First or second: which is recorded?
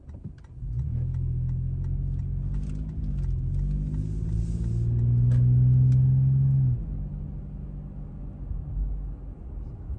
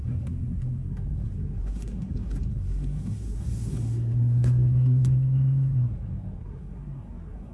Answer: first